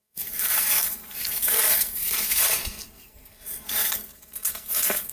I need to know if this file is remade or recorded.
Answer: remade